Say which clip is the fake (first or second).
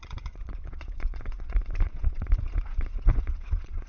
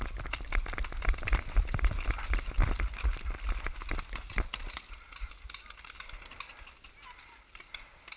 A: first